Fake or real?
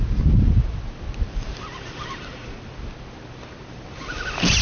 real